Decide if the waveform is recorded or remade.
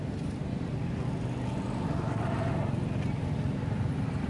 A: recorded